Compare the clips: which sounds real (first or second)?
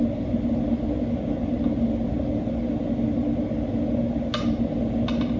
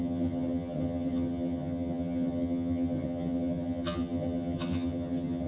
first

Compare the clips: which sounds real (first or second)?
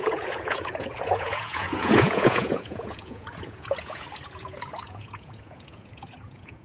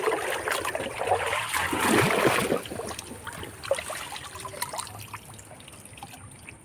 second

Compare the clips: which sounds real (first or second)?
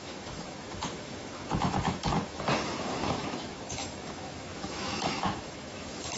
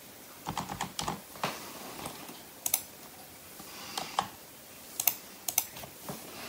second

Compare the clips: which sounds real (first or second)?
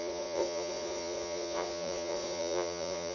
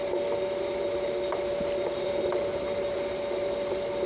second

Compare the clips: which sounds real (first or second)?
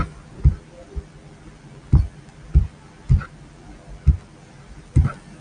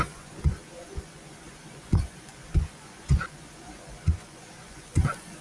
first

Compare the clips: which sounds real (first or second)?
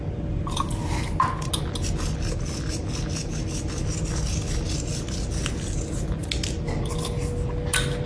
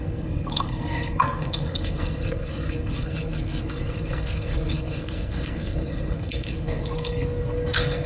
first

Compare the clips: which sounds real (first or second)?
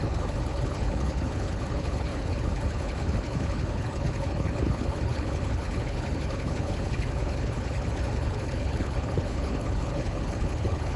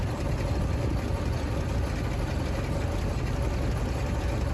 second